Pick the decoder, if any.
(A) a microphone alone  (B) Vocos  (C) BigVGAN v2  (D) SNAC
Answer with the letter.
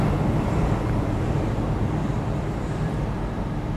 C